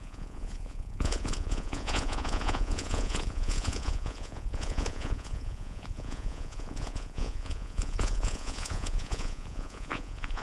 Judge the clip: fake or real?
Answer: fake